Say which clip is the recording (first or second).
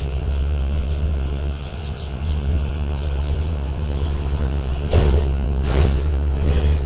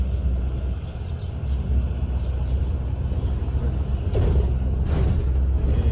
second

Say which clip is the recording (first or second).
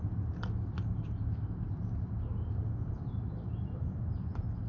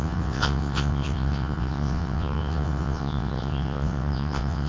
first